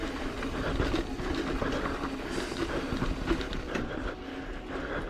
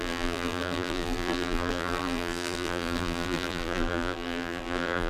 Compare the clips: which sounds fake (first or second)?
second